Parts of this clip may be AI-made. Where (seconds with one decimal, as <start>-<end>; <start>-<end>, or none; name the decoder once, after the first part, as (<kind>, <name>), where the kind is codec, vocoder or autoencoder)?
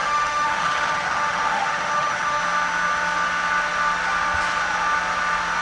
0.0-2.4 (autoencoder, DAC-VAE)